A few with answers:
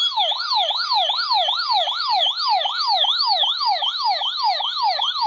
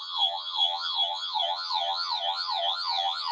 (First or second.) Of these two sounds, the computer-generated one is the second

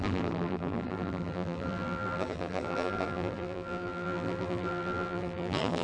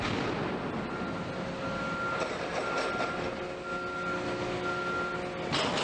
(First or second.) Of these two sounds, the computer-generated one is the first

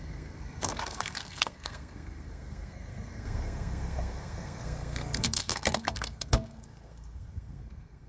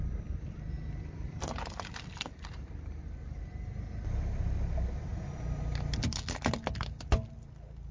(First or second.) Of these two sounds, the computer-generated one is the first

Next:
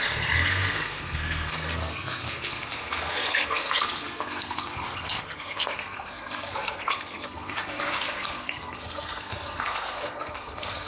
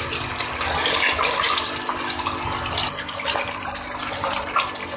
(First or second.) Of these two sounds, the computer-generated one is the first